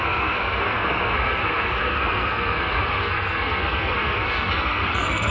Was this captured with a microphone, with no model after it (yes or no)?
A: no